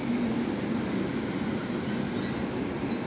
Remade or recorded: recorded